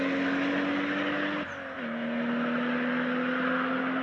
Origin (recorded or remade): recorded